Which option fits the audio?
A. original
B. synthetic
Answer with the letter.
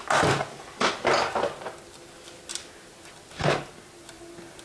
A